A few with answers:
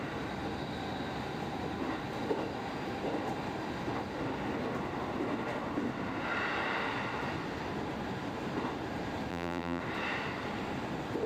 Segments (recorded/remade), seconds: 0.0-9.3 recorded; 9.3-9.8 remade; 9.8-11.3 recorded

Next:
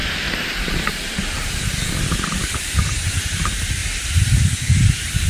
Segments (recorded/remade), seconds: 0.0-3.8 recorded; 3.8-4.4 remade; 4.4-5.3 recorded

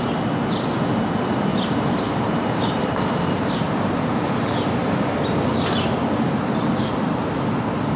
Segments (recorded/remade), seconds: 0.0-1.5 recorded; 1.5-4.7 remade; 4.7-8.0 recorded

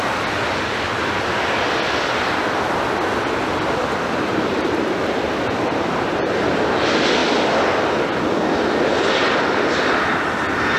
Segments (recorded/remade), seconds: 0.0-4.3 recorded; 4.3-6.2 remade; 6.2-10.8 recorded

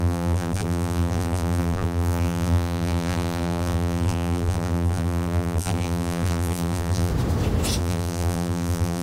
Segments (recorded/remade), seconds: 0.0-7.1 remade; 7.1-7.8 recorded; 7.8-9.0 remade